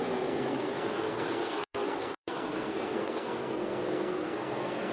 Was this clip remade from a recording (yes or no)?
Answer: yes